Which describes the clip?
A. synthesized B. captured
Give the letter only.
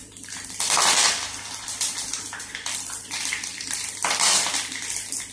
A